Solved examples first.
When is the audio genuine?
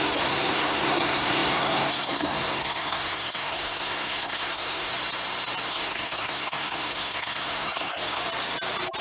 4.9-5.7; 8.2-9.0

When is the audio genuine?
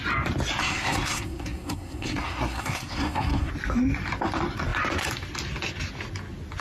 0.0-0.6; 3.5-6.6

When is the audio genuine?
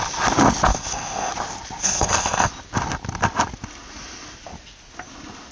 0.0-0.7; 1.3-1.8; 2.5-5.5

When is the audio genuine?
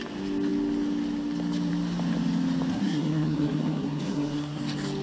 0.0-2.7; 4.6-5.0